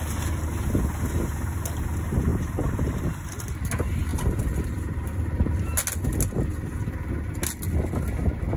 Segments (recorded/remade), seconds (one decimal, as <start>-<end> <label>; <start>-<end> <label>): 0.0-2.3 recorded; 2.3-3.0 remade; 3.0-4.1 recorded; 4.1-4.6 remade; 4.6-8.6 recorded